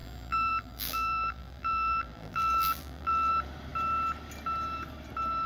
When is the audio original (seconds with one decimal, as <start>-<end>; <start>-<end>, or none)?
3.3-5.5